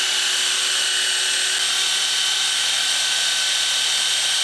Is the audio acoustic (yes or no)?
yes